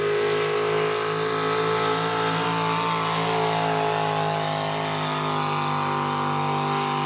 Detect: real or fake real